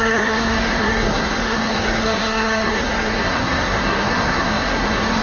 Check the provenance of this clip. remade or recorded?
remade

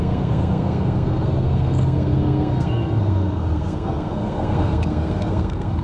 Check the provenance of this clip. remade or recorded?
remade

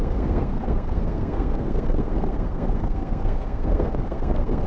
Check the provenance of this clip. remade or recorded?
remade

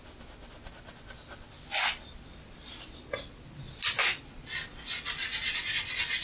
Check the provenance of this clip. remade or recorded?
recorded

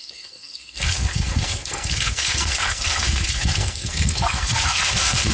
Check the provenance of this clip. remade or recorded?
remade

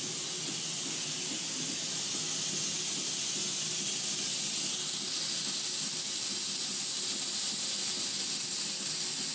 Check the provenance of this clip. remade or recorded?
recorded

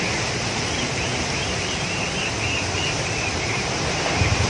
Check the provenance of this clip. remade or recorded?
recorded